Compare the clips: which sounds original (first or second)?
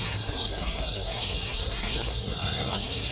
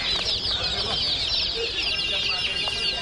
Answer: second